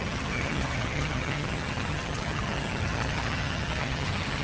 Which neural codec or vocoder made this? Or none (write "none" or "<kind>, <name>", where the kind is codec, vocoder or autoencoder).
vocoder, HiFi-GAN